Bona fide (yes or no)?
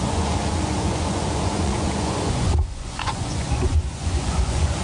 no